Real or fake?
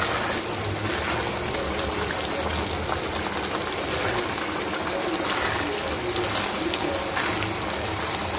real